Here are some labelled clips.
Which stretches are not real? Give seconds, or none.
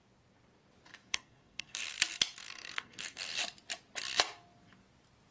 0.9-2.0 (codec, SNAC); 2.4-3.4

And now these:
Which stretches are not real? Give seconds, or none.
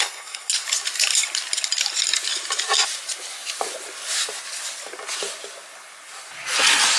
0.0-0.5 (codec, SNAC)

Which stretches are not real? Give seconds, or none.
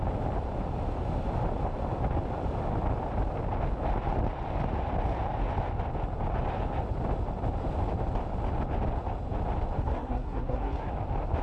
9.8-10.9 (codec, SNAC)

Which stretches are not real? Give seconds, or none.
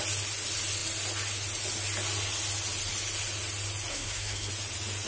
3.9-4.5 (codec, SNAC)